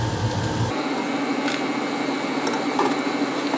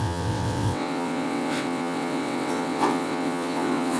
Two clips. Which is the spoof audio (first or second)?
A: second